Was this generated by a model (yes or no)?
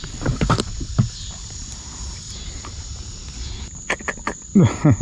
no